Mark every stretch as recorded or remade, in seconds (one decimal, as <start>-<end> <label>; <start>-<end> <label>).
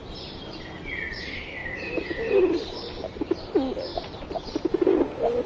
0.0-1.6 recorded; 1.6-3.2 remade; 3.2-3.9 recorded; 3.9-5.5 remade